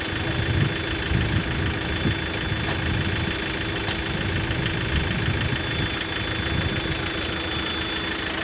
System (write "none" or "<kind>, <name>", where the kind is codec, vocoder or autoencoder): none